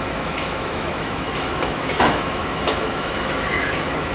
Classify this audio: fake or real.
fake